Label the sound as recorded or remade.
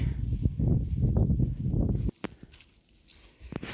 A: recorded